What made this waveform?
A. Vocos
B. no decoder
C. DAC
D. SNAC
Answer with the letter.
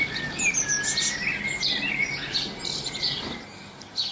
B